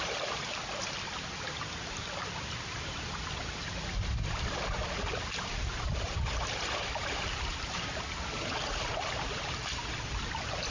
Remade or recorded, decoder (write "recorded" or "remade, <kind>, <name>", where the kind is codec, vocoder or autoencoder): recorded